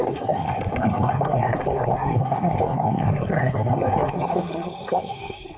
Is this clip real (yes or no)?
no